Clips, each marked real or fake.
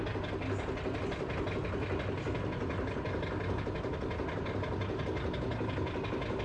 real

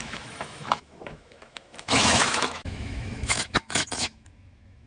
fake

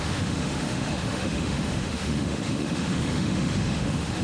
fake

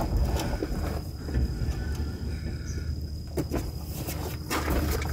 real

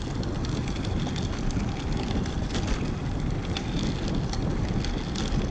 real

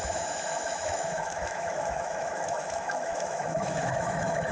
fake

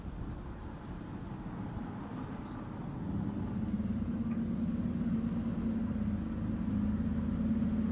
real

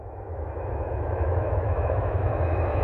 fake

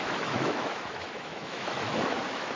fake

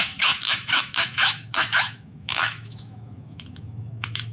fake